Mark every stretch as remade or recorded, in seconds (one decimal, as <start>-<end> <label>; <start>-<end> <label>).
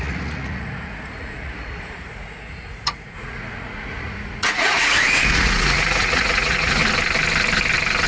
0.0-6.8 remade; 6.8-8.1 recorded